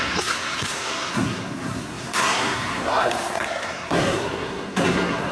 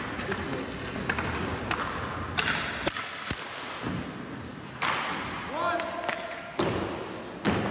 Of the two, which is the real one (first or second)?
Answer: second